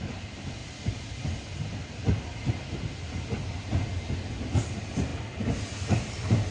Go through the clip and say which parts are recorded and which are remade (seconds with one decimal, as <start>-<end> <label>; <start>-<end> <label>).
0.0-6.5 recorded

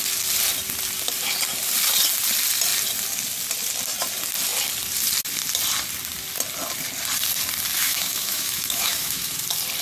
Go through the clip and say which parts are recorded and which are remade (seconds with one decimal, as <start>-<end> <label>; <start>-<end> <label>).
0.0-7.8 recorded; 7.8-9.4 remade; 9.4-9.8 recorded

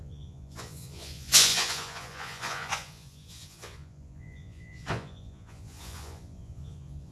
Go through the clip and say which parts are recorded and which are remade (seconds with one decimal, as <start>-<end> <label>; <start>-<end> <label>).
0.0-7.1 remade

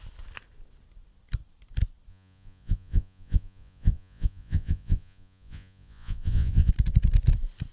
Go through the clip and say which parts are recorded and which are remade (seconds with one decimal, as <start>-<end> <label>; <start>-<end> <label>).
0.0-2.1 recorded; 2.1-6.7 remade; 6.7-7.7 recorded

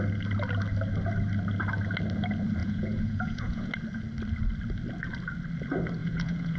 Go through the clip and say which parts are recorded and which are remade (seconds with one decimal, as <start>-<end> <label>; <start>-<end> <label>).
0.0-2.6 recorded; 2.6-3.7 remade; 3.7-6.0 recorded; 6.0-6.6 remade